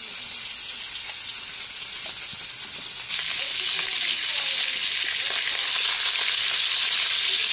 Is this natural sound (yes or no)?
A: yes